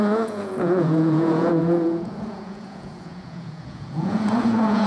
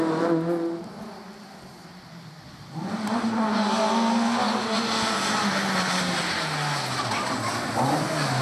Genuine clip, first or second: second